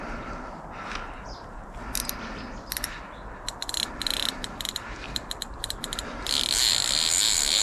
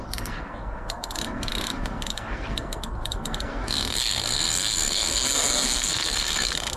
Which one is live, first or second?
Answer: first